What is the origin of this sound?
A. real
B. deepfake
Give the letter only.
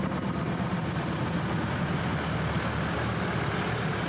A